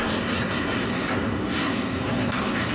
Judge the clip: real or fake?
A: fake